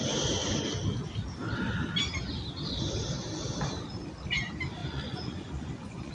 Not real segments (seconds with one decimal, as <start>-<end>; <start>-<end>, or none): 4.8-6.1